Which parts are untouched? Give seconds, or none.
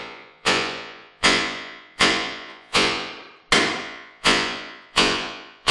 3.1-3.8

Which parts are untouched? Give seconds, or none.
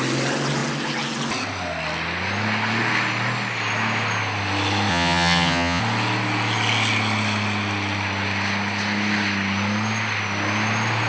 0.0-4.9; 5.8-11.1